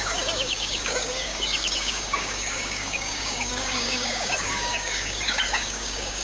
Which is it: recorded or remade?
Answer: remade